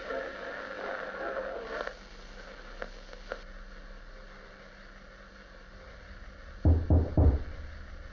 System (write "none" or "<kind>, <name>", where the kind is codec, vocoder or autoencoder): none